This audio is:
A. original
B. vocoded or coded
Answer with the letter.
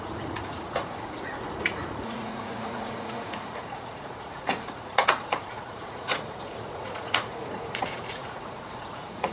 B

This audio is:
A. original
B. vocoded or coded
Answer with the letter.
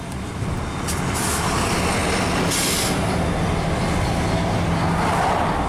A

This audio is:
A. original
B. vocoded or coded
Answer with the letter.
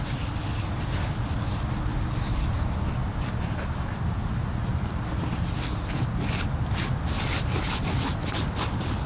A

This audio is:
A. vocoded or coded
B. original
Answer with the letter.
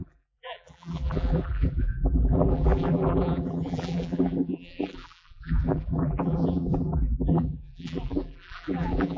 A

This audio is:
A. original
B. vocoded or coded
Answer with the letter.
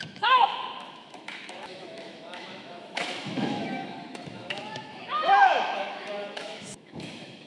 B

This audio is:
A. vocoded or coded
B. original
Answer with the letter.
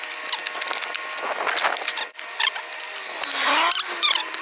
B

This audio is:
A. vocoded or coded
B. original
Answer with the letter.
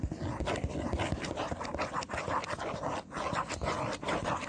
A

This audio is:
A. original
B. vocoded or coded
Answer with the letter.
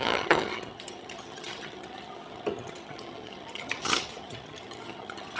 B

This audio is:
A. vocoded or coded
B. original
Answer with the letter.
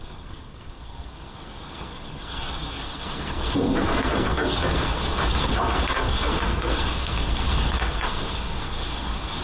A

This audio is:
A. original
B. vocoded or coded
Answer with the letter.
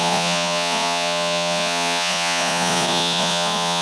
B